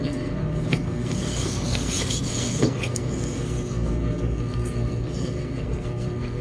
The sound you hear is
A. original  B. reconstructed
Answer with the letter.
B